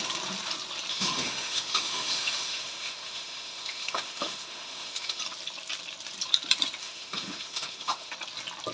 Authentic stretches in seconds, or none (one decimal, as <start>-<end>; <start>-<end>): 0.0-0.9; 5.2-6.8; 8.1-8.7